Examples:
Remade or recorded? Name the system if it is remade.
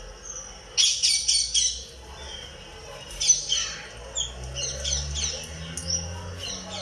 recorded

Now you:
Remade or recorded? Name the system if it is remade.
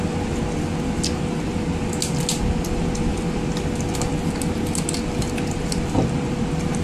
recorded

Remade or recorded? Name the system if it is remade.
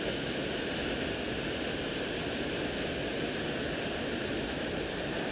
recorded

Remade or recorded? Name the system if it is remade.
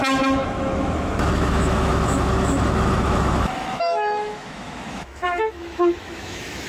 remade, autoencoder, DAC-VAE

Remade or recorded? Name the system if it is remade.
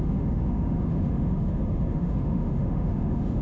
remade, autoencoder, DAC-VAE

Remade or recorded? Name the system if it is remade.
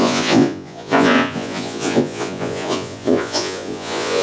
remade, vocoder, Vocos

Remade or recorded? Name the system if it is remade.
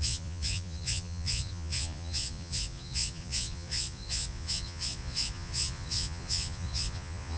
remade, vocoder, Vocos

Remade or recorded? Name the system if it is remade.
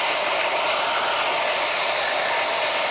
recorded